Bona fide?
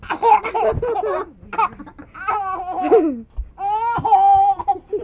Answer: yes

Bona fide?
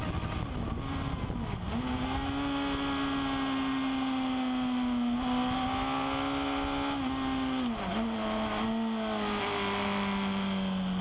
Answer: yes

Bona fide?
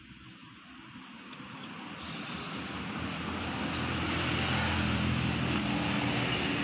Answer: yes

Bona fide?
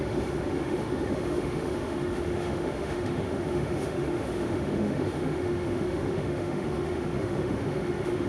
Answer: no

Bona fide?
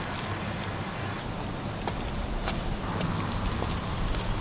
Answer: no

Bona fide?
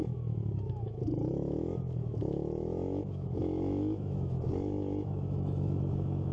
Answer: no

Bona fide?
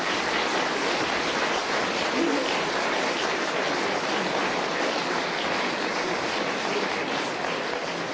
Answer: yes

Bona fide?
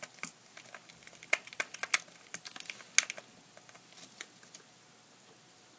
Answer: yes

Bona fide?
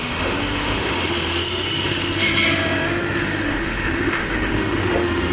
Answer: no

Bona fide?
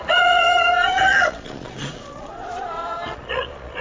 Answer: no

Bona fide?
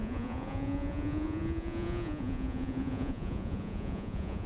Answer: no